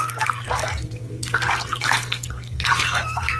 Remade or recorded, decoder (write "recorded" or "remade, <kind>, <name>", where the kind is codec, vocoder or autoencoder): remade, codec, SNAC